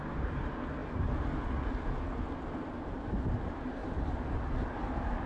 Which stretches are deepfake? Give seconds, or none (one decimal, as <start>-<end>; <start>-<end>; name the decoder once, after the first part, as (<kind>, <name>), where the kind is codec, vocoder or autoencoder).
none